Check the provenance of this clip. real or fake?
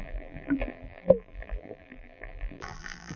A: fake